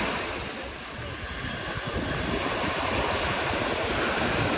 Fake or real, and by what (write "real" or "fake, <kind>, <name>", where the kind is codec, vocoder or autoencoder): real